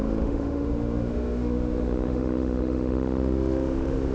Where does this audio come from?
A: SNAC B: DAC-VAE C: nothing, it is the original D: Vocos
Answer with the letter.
B